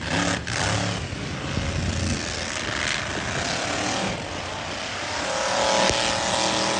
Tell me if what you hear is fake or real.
real